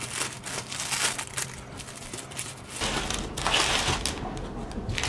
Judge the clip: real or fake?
real